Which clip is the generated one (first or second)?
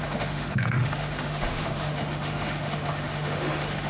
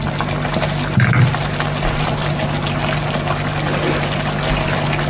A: first